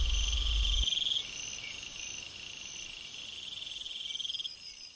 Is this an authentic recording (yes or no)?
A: yes